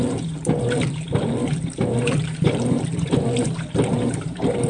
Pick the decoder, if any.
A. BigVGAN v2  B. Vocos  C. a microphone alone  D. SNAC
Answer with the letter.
A